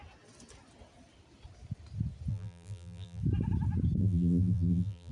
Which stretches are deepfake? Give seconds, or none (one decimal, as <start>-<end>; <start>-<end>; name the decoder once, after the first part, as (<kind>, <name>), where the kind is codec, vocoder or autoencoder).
2.3-3.2 (vocoder, BigVGAN v2); 4.0-5.1